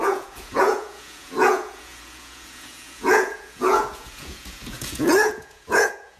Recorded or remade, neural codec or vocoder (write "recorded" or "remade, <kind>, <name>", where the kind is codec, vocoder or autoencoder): remade, vocoder, Vocos